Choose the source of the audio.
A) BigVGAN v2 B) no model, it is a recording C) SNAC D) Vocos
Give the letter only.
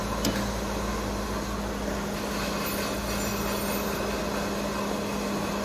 B